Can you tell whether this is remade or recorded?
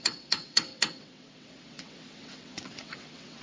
remade